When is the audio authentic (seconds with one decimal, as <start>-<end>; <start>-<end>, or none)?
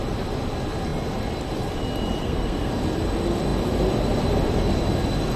0.0-2.2; 2.7-5.4